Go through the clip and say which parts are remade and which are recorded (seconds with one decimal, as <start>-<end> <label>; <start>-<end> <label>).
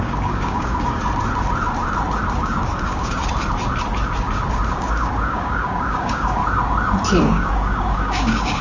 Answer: 0.0-1.0 remade; 1.0-2.4 recorded; 2.4-3.2 remade; 3.2-4.7 recorded; 4.7-6.4 remade; 6.4-7.2 recorded; 7.2-8.6 remade